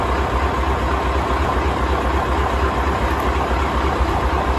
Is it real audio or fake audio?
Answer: real